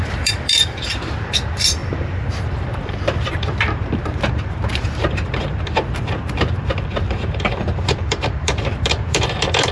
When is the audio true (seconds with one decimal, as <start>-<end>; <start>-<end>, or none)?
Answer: 1.8-2.4